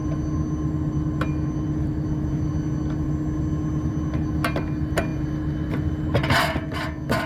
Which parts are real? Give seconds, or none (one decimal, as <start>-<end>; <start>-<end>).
0.0-7.3